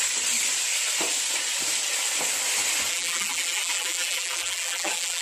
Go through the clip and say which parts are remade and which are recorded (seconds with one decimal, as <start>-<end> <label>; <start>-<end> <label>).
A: 0.0-2.9 recorded; 2.9-5.2 remade